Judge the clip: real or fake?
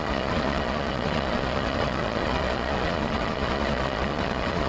fake